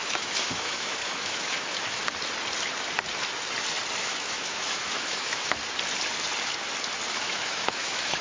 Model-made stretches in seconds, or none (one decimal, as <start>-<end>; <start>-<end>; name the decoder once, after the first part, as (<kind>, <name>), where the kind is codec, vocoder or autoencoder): 0.0-2.0 (autoencoder, DAC-VAE); 4.0-5.6; 7.1-8.2